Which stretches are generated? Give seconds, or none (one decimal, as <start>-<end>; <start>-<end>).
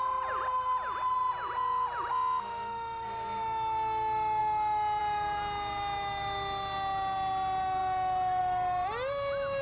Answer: none